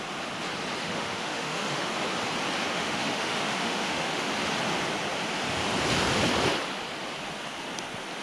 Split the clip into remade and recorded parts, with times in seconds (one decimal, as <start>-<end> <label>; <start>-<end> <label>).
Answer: 0.0-0.8 recorded; 0.8-1.9 remade; 1.9-2.7 recorded; 2.7-4.3 remade; 4.3-8.2 recorded